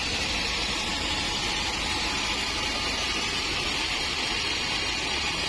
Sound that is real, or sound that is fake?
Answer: fake